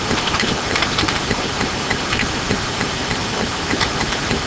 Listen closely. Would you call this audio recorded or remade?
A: remade